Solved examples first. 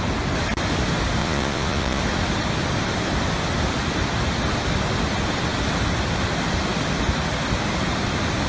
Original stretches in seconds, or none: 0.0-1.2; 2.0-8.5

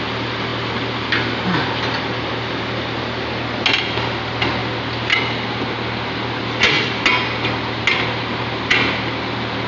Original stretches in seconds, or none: 0.0-9.7

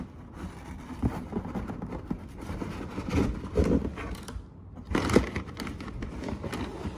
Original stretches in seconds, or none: 0.0-7.0

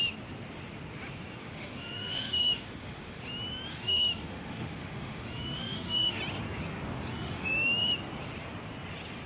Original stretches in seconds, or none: 0.0-1.4; 3.2-3.7; 6.2-7.1; 7.9-9.3

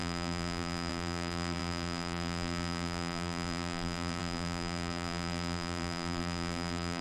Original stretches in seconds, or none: none

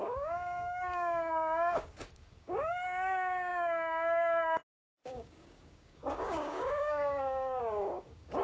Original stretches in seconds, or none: none